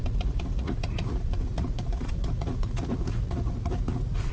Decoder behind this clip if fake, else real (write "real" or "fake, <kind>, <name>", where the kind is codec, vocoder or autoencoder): fake, vocoder, Vocos